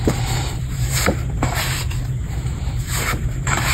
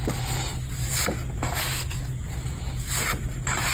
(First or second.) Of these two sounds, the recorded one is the second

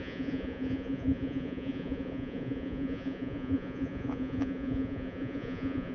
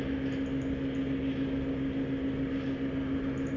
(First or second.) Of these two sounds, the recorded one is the second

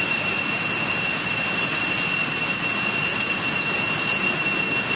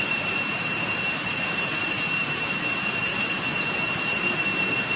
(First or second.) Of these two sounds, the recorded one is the first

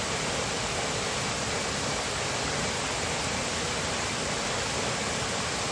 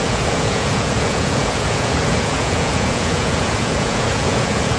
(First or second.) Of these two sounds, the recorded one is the first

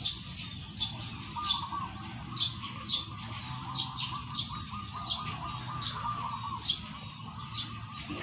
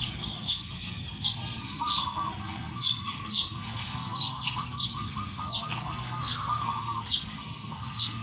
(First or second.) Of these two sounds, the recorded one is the first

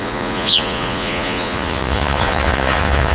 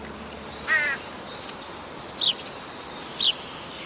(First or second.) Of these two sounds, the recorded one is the second